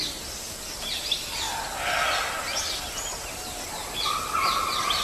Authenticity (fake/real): real